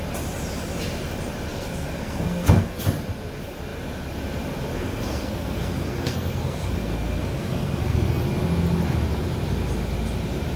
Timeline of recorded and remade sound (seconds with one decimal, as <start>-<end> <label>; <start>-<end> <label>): 0.0-1.5 recorded; 1.5-2.8 remade; 2.8-4.7 recorded; 4.7-8.2 remade; 8.2-10.6 recorded